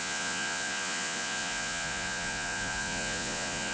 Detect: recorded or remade remade